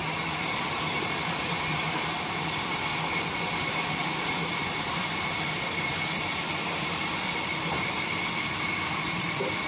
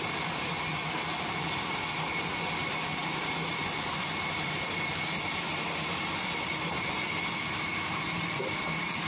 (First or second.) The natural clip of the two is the second